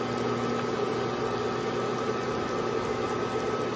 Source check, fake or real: real